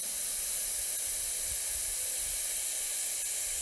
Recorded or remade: recorded